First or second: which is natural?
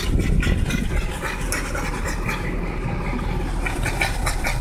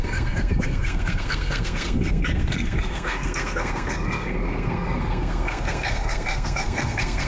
first